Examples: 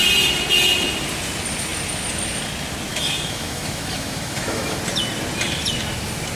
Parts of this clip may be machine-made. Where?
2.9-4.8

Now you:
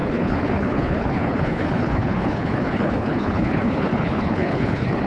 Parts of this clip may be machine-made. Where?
0.0-5.1